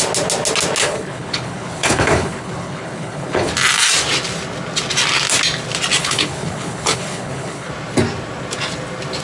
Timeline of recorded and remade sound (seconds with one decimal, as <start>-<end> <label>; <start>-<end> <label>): 0.0-0.8 recorded; 0.8-3.5 remade; 3.5-6.0 recorded; 6.0-7.7 remade; 7.7-9.2 recorded

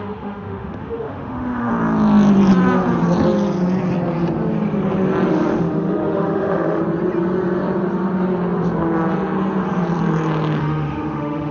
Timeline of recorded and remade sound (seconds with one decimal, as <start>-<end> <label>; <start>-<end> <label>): 0.0-1.7 remade; 1.7-5.3 recorded; 5.3-6.8 remade; 6.8-10.6 recorded; 10.6-11.5 remade

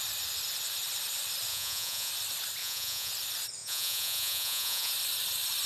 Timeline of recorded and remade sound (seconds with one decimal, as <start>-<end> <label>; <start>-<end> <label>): 0.0-1.5 recorded; 1.5-2.1 remade; 2.1-2.6 recorded; 2.6-3.1 remade; 3.1-3.6 recorded; 3.6-4.9 remade; 4.9-5.7 recorded